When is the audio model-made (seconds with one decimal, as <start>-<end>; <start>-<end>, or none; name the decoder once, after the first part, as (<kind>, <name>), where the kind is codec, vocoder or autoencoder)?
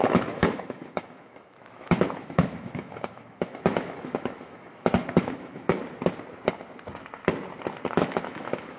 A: 0.0-5.8 (autoencoder, DAC-VAE); 7.9-8.8